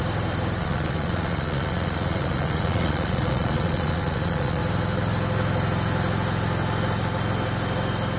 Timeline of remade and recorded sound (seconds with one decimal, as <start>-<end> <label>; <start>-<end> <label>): 0.0-0.6 recorded; 0.6-4.6 remade; 4.6-8.2 recorded